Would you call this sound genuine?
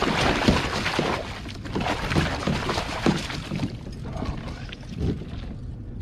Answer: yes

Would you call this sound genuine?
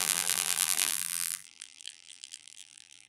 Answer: no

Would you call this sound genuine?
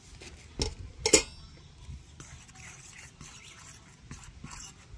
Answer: yes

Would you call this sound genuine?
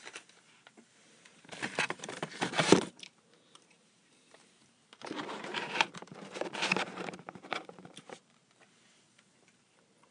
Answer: no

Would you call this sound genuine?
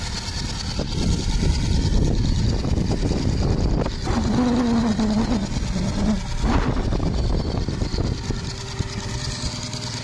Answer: yes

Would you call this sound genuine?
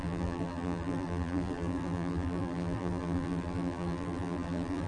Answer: no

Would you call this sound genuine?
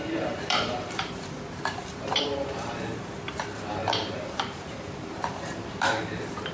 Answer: no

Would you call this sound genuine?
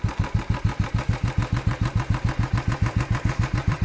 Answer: no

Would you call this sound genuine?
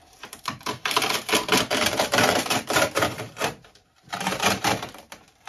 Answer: no